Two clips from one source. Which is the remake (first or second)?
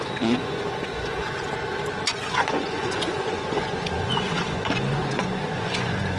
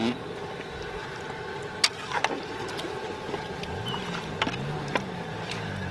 first